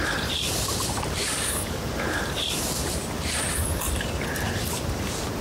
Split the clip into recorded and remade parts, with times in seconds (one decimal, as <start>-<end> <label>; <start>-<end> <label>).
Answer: 0.0-1.2 recorded; 1.2-1.9 remade; 1.9-5.4 recorded